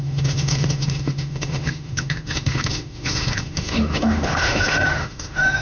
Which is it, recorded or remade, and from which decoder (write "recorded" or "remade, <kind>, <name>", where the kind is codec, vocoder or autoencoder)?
remade, autoencoder, DAC-VAE